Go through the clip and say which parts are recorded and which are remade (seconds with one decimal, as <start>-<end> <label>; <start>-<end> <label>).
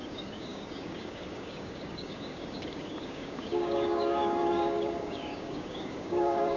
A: 0.0-6.6 remade